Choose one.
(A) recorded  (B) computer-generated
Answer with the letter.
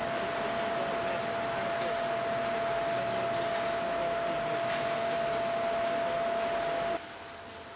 A